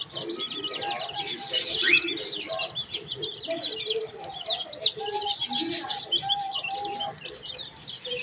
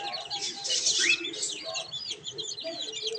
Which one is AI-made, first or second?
first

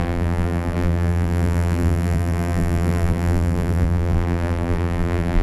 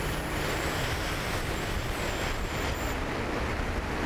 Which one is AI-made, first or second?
first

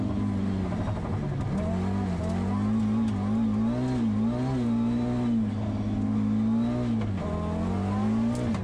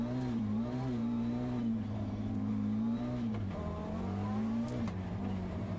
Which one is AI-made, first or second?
second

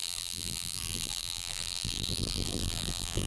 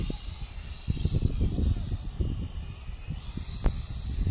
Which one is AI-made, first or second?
first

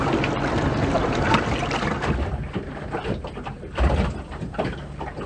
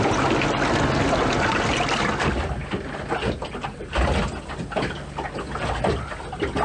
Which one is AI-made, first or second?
first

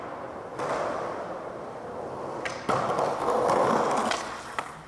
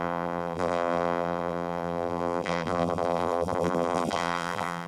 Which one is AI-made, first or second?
second